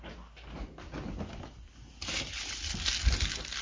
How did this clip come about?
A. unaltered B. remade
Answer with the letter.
A